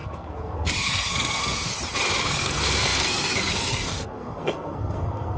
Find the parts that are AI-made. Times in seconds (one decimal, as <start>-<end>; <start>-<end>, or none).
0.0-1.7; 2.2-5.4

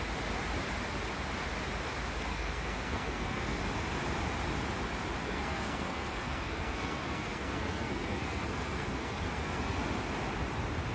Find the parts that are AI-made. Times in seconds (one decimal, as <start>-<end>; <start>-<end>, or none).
2.3-3.6; 5.2-9.8

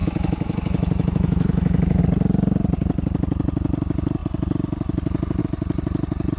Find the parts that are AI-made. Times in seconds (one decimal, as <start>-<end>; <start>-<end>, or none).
0.0-2.0

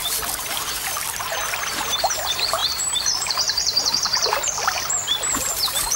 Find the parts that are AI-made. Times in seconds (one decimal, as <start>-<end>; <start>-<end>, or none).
1.7-6.0